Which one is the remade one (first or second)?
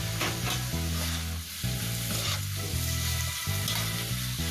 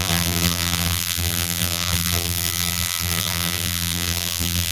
second